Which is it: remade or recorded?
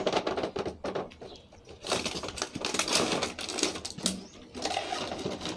recorded